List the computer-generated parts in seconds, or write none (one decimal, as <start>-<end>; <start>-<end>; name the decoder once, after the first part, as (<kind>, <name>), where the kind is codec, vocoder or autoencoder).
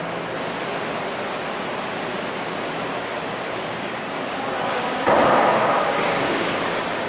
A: 3.2-7.1 (codec, DAC)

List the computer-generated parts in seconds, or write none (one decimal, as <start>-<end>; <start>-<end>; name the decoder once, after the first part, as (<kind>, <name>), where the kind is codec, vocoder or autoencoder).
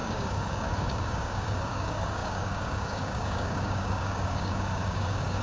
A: 0.0-5.4 (codec, DAC)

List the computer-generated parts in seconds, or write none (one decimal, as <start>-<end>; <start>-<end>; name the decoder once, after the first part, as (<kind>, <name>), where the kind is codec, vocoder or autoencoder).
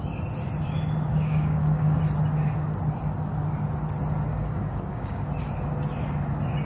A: 1.1-2.0 (codec, DAC); 4.3-5.3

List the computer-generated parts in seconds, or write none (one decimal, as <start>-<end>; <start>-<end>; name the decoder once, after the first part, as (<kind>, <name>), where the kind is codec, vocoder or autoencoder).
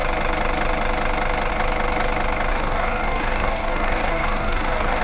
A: 2.5-5.0 (codec, DAC)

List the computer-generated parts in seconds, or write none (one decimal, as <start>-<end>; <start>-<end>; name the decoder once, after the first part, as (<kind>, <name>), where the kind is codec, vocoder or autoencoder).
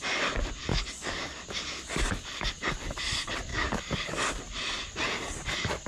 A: 0.7-1.4 (codec, DAC); 3.5-4.3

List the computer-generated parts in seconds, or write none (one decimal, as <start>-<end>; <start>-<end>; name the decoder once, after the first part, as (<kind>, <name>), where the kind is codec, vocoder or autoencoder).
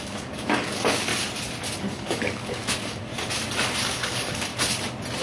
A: 0.0-1.1 (codec, DAC); 1.9-3.1; 3.8-4.5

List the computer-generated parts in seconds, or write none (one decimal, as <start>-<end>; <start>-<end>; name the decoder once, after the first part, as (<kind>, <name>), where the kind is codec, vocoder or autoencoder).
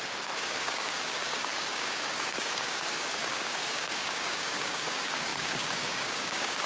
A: 0.0-6.7 (codec, DAC)